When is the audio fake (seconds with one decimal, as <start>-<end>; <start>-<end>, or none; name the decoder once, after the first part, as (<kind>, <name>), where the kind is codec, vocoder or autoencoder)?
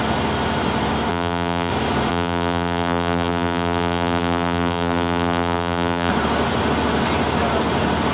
1.1-1.7 (vocoder, BigVGAN v2); 2.1-6.1